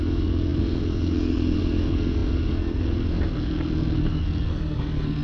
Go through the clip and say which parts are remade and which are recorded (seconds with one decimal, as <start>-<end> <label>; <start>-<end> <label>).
0.0-5.2 remade